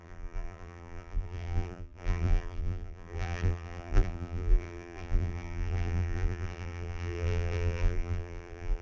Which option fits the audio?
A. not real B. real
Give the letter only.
A